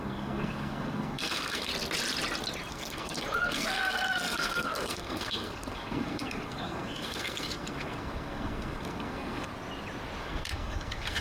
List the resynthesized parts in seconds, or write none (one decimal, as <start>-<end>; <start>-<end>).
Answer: 0.0-1.7; 2.7-9.5; 10.2-11.2